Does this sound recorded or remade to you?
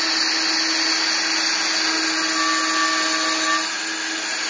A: recorded